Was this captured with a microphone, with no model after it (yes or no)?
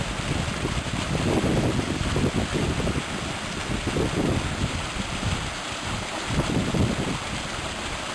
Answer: yes